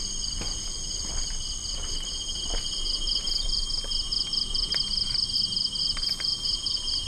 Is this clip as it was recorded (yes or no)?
no